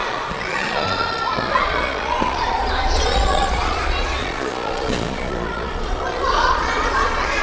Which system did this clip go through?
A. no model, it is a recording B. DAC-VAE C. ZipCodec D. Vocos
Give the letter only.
D